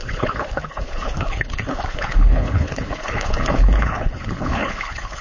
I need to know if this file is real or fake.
fake